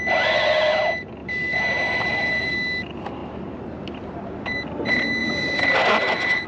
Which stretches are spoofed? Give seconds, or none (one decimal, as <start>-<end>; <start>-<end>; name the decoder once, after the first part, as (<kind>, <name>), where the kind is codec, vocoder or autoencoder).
1.2-2.5 (vocoder, BigVGAN v2); 5.2-5.8